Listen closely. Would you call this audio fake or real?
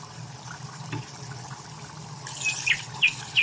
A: real